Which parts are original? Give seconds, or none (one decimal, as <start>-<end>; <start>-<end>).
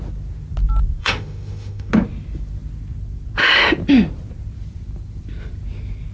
0.0-1.0; 1.9-6.1